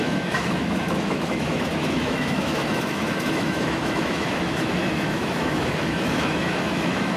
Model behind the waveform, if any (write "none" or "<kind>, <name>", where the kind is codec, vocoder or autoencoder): autoencoder, DAC-VAE